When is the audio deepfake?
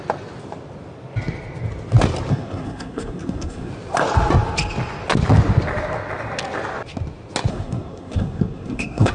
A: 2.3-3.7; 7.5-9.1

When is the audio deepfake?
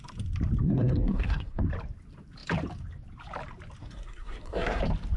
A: 0.6-1.7; 3.8-4.8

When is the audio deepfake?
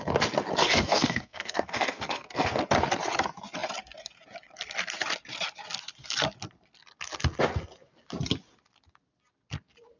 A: 0.6-2.6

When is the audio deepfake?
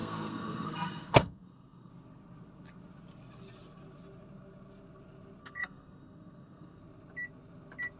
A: 0.0-1.9; 5.4-6.8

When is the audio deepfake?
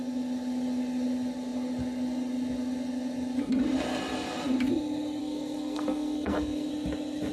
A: 5.2-6.7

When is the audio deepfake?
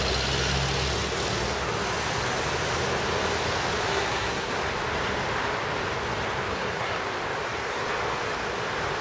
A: 3.9-4.5; 6.5-7.0